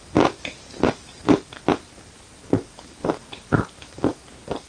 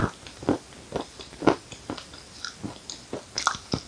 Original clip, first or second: second